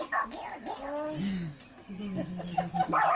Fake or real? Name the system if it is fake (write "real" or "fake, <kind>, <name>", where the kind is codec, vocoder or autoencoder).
real